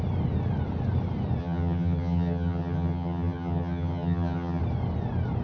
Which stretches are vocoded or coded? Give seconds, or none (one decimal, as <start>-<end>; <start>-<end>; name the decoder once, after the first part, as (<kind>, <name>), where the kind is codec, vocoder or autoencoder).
1.4-4.6 (vocoder, HiFi-GAN)